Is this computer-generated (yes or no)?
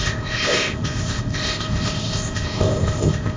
yes